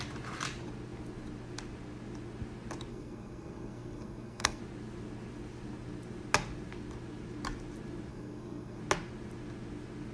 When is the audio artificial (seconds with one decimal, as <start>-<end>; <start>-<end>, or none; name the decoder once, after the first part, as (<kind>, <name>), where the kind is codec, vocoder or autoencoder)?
2.9-4.6 (codec, SNAC); 8.1-8.8

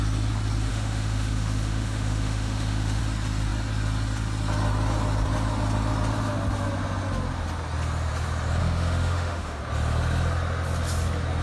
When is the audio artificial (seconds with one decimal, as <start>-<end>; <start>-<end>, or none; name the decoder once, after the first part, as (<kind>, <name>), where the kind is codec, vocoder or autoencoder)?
0.7-3.0 (autoencoder, DAC-VAE); 8.6-9.6

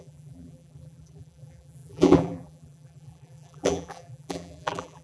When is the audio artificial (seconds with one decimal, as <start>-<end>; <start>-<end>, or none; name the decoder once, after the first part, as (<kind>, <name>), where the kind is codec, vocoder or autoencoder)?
0.0-5.0 (vocoder, BigVGAN v2)

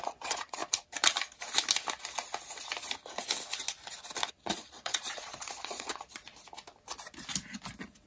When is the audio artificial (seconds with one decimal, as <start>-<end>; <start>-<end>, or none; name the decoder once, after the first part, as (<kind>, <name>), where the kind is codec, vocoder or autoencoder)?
0.0-0.6 (vocoder, Vocos); 4.3-6.3

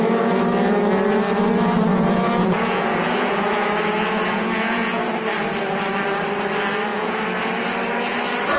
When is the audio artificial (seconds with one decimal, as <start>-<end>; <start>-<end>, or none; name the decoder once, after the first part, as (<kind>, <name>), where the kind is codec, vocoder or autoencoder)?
1.9-5.0 (vocoder, Vocos); 6.9-7.5